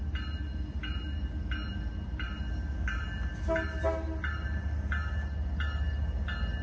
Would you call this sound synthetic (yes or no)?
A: no